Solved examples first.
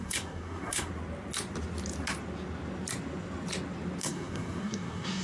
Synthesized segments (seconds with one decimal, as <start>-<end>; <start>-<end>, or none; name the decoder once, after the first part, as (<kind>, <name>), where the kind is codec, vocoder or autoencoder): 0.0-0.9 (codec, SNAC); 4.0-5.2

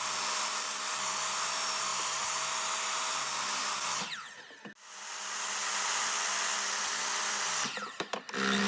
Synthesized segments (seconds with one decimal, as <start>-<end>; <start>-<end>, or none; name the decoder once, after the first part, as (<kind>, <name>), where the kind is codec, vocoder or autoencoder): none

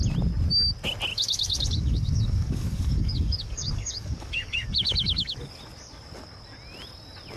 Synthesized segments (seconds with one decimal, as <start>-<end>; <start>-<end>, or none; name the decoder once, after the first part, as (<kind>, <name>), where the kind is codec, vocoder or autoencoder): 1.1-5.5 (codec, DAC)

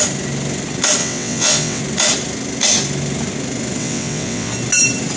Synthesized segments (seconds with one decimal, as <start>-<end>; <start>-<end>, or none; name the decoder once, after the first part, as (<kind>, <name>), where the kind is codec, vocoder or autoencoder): 1.0-1.8 (vocoder, WaveNeXt); 3.8-4.5

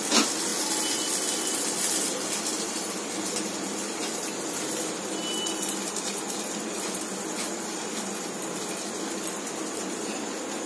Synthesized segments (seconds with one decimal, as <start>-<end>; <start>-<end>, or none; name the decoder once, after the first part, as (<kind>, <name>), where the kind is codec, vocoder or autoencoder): none